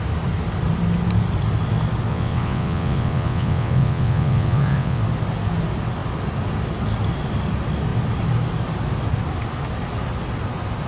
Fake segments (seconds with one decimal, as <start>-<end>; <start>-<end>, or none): 2.1-5.0